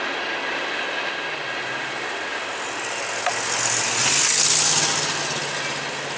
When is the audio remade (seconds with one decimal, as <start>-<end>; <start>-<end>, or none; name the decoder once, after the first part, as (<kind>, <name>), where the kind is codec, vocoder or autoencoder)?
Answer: none